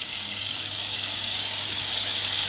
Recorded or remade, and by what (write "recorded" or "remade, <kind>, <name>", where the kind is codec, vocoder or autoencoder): remade, codec, DAC